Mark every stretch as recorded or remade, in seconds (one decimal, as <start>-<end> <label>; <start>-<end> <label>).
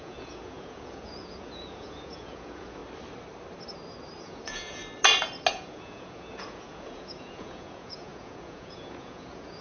0.0-2.8 remade; 2.8-4.2 recorded; 4.2-4.8 remade; 4.8-5.5 recorded; 5.5-9.6 remade